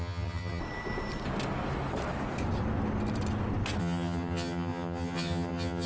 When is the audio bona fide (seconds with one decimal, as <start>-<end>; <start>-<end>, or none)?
0.6-3.8